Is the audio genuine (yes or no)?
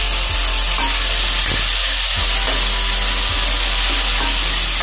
yes